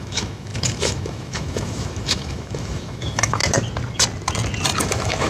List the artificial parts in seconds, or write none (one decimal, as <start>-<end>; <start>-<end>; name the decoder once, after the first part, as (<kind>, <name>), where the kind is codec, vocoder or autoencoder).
0.0-3.4 (autoencoder, DAC-VAE); 4.8-5.3

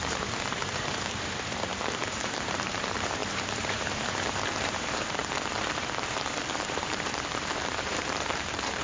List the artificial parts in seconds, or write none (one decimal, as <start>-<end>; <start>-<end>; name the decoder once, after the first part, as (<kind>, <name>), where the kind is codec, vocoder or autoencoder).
0.0-5.2 (vocoder, BigVGAN v2); 6.1-8.8

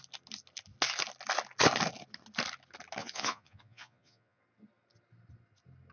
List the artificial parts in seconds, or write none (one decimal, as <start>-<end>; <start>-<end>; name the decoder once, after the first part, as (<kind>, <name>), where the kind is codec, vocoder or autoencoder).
3.0-4.4 (vocoder, Vocos)

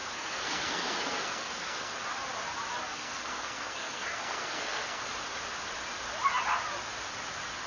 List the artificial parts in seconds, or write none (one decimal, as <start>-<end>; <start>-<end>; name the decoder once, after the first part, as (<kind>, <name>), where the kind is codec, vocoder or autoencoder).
0.0-1.9 (codec, SNAC); 2.9-5.1

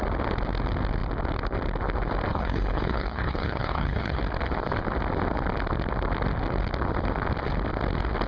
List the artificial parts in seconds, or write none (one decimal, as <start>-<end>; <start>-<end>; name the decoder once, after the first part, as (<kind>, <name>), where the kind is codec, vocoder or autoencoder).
2.3-4.2 (codec, HILCodec)

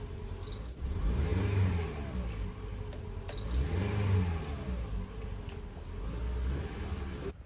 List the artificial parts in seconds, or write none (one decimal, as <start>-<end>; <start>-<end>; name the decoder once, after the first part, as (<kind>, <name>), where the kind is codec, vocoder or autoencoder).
none